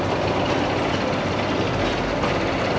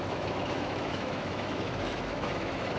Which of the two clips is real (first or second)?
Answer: first